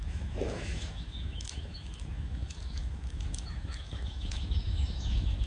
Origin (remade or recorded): remade